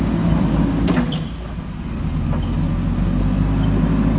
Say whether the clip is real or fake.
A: real